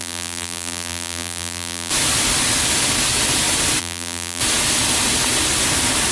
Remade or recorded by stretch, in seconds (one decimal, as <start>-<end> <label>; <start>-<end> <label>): 0.0-1.9 remade; 1.9-3.8 recorded; 3.8-4.4 remade; 4.4-6.1 recorded